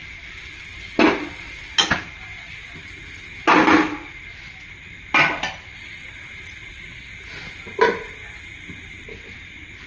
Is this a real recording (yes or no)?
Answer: yes